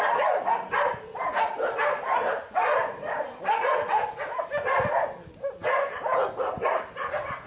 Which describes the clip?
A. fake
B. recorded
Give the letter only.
B